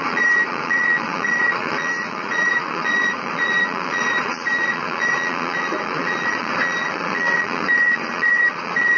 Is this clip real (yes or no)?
no